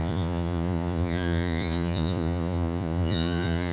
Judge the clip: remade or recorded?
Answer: remade